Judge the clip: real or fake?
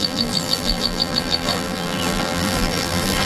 fake